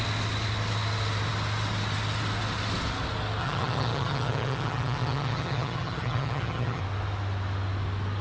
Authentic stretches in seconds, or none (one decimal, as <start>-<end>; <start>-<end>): 0.0-3.4; 6.8-8.2